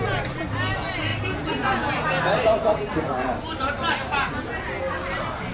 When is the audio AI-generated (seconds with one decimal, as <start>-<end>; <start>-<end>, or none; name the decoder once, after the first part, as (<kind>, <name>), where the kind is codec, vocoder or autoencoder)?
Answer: none